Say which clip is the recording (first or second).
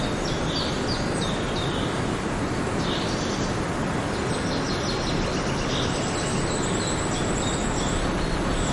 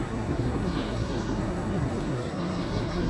first